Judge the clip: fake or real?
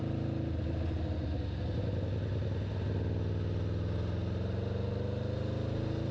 real